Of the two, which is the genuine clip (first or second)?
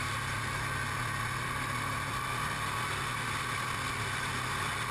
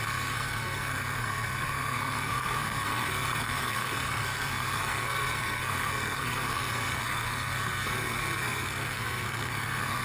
first